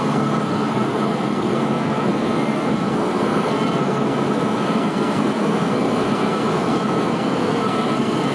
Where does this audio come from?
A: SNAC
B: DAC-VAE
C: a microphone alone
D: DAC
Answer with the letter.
A